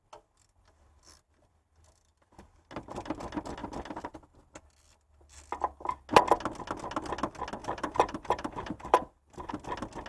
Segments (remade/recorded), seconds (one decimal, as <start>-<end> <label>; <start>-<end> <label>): 0.0-7.6 recorded; 7.6-9.5 remade; 9.5-10.1 recorded